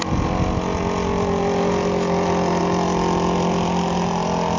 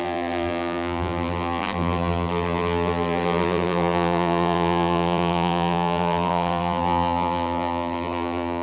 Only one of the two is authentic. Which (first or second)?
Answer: first